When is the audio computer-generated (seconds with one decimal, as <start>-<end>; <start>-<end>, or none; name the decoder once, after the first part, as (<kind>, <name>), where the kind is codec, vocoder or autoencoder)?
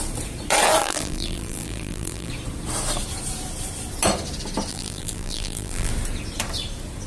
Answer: 0.8-2.3 (vocoder, BigVGAN v2); 4.7-5.9